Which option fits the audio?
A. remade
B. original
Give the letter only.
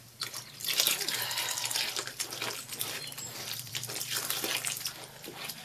A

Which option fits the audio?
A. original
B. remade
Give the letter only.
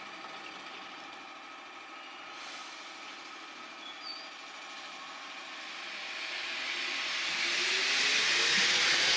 A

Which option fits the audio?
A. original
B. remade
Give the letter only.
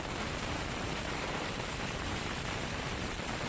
B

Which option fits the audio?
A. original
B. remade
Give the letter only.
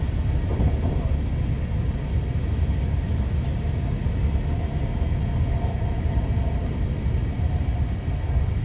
A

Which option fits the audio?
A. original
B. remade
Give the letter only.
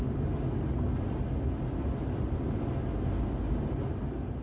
A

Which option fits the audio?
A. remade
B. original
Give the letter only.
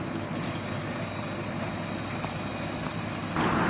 B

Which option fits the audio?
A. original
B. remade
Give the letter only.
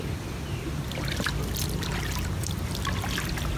A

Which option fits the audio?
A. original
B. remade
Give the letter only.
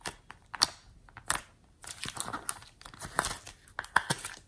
A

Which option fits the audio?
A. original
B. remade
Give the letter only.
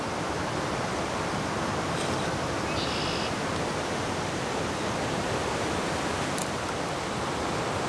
B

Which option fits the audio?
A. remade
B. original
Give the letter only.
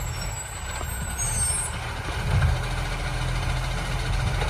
B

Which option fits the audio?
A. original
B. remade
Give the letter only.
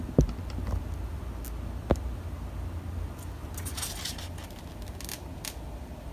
A